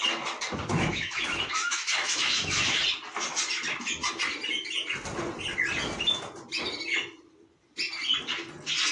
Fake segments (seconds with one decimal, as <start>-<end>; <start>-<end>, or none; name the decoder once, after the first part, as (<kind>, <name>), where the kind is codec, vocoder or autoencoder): 0.7-2.8 (autoencoder, DAC-VAE)